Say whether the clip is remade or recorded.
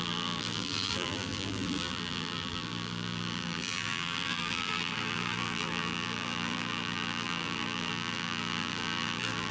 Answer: remade